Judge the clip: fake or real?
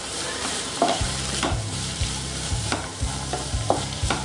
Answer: fake